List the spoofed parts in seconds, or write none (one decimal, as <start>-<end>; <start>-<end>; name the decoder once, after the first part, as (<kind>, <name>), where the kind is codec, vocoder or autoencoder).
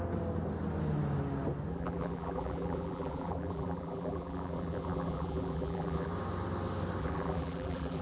1.7-6.1 (vocoder, BigVGAN v2); 7.0-8.0